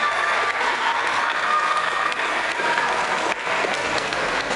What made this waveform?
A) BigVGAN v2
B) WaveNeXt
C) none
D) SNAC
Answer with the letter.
D